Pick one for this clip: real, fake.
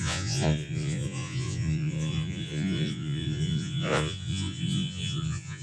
fake